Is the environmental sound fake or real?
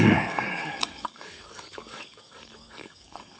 fake